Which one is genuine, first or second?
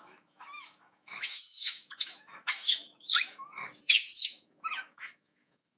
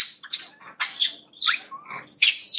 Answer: second